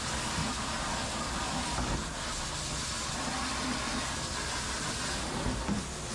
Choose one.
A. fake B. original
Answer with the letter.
B